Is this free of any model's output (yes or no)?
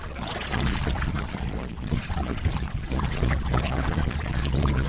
no